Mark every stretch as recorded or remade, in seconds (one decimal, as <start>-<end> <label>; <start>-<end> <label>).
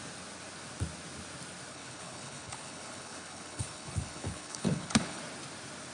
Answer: 0.0-1.7 recorded; 1.7-5.2 remade; 5.2-5.9 recorded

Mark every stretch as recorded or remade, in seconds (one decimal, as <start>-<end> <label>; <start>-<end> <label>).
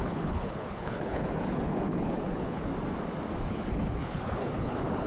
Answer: 0.0-2.7 remade; 2.7-3.5 recorded; 3.5-5.1 remade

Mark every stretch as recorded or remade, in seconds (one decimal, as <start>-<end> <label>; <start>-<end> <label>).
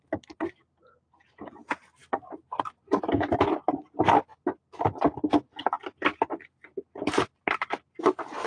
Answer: 0.0-8.5 recorded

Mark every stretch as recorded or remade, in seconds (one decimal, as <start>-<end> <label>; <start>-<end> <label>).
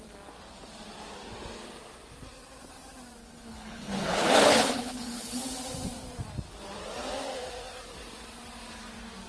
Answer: 0.0-3.2 recorded; 3.2-5.4 remade; 5.4-9.3 recorded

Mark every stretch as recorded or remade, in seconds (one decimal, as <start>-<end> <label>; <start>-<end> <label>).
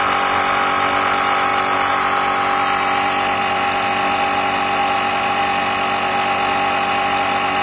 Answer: 0.0-7.6 recorded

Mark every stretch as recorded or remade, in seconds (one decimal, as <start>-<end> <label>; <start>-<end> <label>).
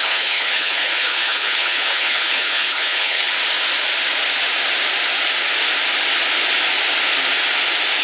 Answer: 0.0-3.3 remade; 3.3-8.0 recorded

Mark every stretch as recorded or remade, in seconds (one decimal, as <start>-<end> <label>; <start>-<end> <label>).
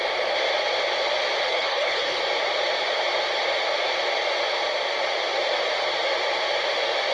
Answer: 0.0-1.4 recorded; 1.4-2.2 remade; 2.2-7.1 recorded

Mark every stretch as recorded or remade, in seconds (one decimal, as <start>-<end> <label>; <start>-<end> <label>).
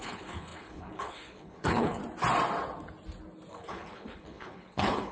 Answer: 0.0-2.0 remade; 2.0-3.5 recorded; 3.5-5.1 remade